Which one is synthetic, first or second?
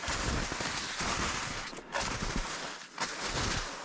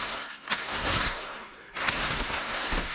second